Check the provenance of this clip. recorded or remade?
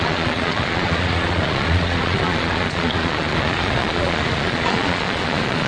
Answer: remade